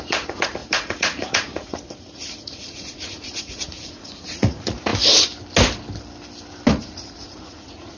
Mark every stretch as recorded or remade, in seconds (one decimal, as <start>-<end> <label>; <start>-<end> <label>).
0.0-4.9 remade; 4.9-6.7 recorded; 6.7-8.0 remade